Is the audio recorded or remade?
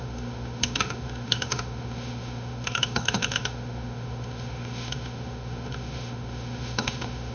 remade